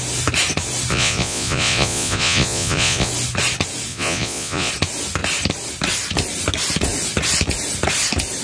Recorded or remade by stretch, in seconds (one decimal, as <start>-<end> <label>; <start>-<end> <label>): 0.0-0.9 recorded; 0.9-3.1 remade; 3.1-3.9 recorded; 3.9-4.7 remade; 4.7-8.4 recorded